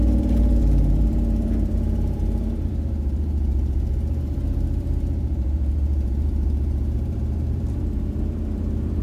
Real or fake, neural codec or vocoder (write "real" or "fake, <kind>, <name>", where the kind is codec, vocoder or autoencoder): fake, vocoder, BigVGAN v2